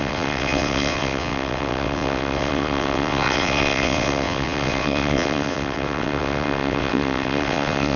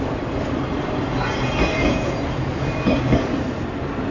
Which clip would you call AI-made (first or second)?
first